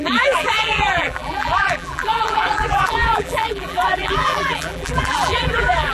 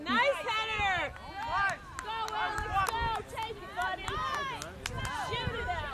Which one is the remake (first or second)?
first